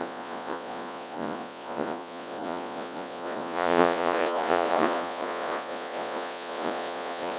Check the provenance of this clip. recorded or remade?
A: remade